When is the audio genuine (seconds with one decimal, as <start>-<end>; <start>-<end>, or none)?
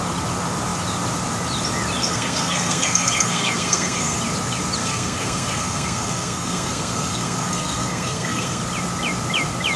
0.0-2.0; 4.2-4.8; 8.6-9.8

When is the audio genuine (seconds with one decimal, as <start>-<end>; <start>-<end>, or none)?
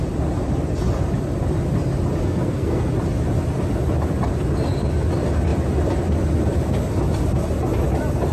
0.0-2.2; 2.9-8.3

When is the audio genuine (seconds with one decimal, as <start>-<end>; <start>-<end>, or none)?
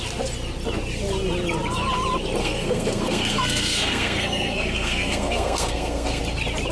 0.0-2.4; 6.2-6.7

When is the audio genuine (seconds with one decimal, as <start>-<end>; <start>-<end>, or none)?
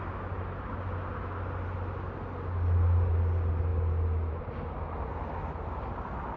0.0-6.4